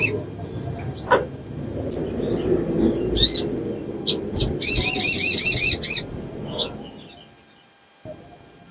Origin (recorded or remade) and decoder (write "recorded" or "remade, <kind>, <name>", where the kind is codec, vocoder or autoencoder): recorded